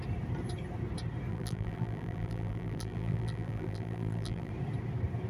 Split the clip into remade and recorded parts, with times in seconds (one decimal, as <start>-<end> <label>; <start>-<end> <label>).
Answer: 0.0-1.3 recorded; 1.3-4.5 remade; 4.5-5.3 recorded